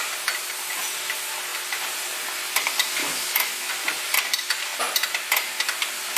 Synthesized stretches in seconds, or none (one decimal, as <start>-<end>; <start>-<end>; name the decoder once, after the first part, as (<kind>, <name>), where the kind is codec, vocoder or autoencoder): 3.0-3.7 (autoencoder, DAC-VAE)

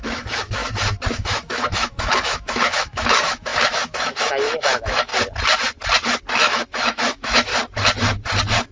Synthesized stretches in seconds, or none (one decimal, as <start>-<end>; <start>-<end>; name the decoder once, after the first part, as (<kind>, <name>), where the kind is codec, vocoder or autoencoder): 0.0-0.6 (autoencoder, DAC-VAE); 1.1-5.1; 6.3-7.5